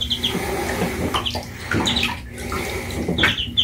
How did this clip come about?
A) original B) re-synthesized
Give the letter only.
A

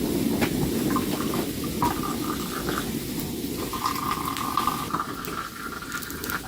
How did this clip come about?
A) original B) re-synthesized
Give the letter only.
A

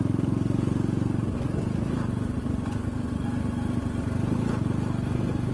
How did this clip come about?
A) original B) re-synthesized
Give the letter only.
A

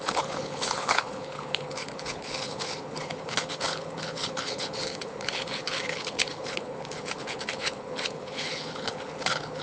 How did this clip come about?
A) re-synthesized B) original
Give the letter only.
A